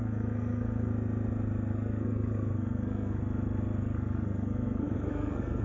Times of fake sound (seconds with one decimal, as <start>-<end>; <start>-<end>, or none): 0.0-0.9; 1.7-3.2; 3.8-5.6